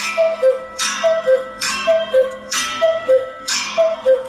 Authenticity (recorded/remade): remade